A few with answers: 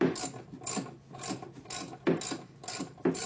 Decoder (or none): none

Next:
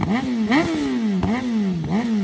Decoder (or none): none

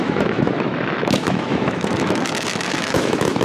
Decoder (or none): autoencoder, DAC-VAE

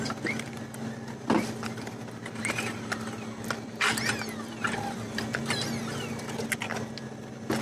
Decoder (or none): none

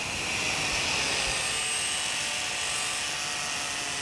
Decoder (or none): none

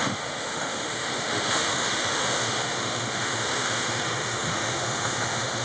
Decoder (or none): autoencoder, DAC-VAE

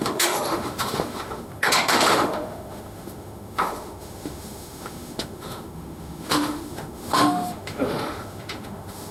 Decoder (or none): autoencoder, DAC-VAE